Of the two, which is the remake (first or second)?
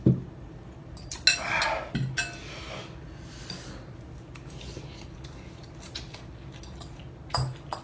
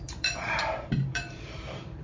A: second